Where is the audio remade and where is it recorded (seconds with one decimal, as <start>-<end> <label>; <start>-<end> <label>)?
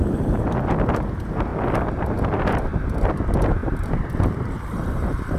0.0-1.5 remade; 1.5-2.4 recorded; 2.4-5.4 remade